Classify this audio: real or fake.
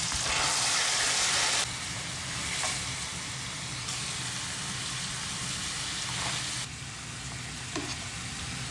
real